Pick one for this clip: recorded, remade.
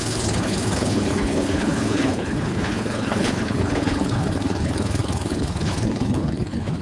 remade